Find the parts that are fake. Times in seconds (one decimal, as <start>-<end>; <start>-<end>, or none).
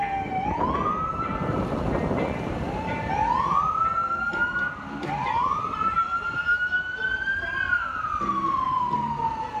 0.0-6.5; 7.1-9.6